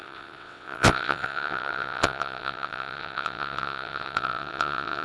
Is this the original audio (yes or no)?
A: no